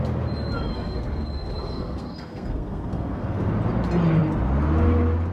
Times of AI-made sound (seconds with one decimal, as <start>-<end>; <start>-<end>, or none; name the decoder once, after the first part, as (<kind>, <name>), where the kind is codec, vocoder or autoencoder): 0.7-3.5 (codec, SNAC)